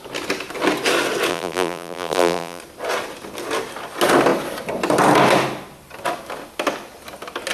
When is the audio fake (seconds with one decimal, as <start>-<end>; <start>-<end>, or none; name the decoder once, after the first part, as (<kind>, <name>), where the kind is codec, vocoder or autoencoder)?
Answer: 1.3-2.6 (vocoder, BigVGAN v2)